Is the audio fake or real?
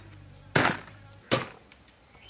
real